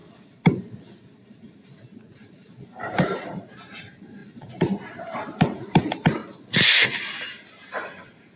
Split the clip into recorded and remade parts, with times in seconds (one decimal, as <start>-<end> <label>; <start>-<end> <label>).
0.0-6.2 remade; 6.2-7.1 recorded; 7.1-8.4 remade